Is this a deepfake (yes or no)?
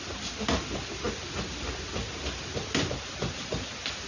no